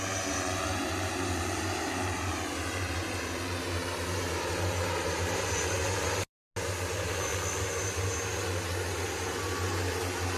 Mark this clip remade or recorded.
recorded